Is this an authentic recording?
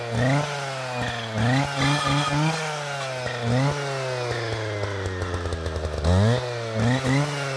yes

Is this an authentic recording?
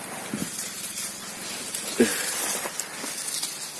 yes